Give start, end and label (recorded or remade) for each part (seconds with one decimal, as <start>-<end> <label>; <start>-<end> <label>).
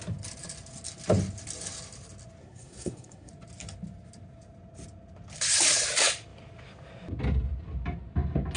0.0-2.4 recorded; 2.4-3.3 remade; 3.3-8.6 recorded